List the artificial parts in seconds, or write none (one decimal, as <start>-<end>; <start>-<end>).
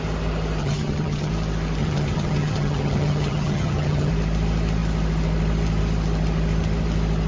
0.6-1.3; 1.8-4.1